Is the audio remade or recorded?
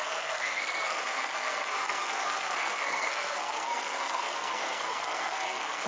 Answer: remade